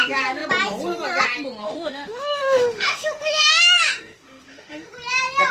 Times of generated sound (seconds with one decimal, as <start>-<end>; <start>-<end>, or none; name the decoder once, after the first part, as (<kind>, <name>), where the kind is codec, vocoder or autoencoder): 1.6-4.9 (autoencoder, DAC-VAE)